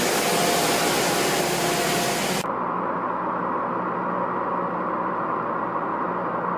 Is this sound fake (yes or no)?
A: no